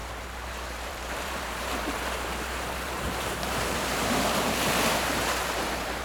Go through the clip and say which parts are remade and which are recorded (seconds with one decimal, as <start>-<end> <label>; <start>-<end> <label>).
0.0-6.0 remade